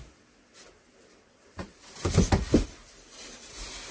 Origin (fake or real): real